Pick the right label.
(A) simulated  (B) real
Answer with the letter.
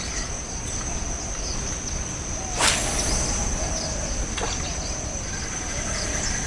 B